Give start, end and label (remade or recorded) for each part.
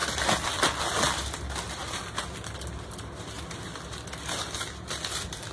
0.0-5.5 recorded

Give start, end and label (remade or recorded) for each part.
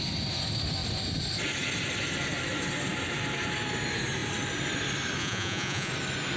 0.0-5.2 recorded; 5.2-5.9 remade; 5.9-6.4 recorded